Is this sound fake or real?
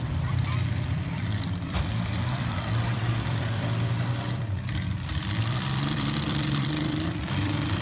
fake